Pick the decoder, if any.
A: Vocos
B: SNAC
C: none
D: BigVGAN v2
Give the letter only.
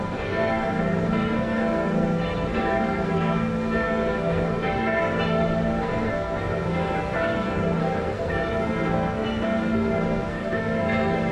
B